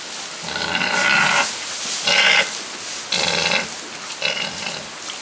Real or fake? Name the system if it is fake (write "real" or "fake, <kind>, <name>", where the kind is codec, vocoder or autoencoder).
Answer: real